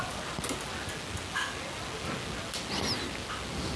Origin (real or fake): real